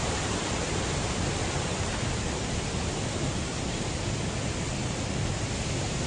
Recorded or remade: recorded